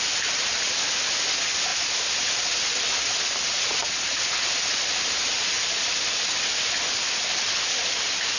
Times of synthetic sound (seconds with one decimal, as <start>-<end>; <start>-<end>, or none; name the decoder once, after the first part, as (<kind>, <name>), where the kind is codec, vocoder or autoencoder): none